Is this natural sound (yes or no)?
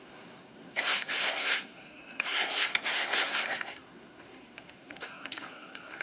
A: no